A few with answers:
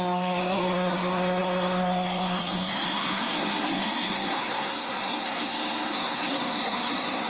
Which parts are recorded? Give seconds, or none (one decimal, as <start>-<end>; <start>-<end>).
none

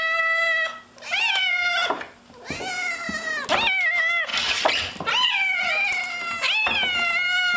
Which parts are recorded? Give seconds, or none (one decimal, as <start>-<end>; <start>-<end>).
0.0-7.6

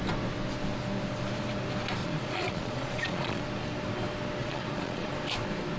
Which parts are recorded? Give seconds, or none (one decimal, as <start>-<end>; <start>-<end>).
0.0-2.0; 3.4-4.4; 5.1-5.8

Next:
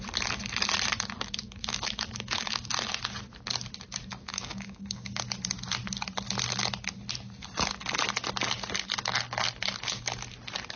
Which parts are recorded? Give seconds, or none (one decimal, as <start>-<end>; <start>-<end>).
0.0-1.4; 2.7-4.3; 5.2-10.8

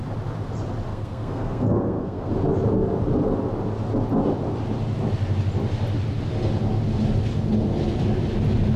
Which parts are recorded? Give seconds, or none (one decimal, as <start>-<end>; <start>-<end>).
0.0-0.9; 2.3-8.8